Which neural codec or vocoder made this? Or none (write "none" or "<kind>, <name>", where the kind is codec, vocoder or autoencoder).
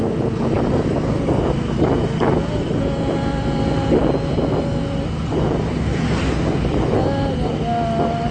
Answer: none